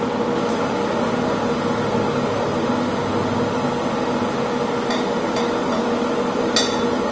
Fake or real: real